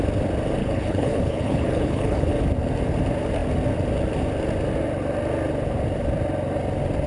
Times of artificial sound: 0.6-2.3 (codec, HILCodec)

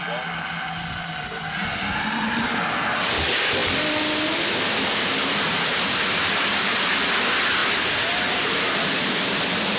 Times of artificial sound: none

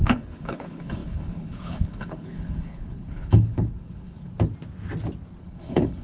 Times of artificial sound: 0.0-4.3 (codec, HILCodec); 5.4-6.0

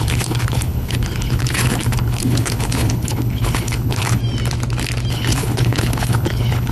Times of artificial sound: 0.0-4.2 (codec, HILCodec); 5.1-6.7

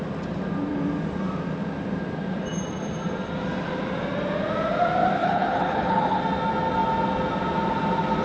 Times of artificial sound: 5.2-6.2 (codec, HILCodec)

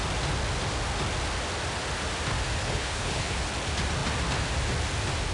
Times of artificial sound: 2.6-3.4 (codec, HILCodec)